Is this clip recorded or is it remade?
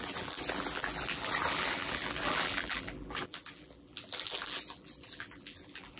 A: remade